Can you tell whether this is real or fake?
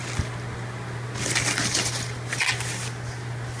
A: real